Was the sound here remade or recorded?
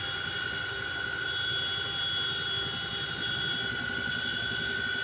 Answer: recorded